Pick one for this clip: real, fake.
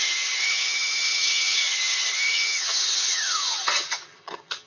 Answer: fake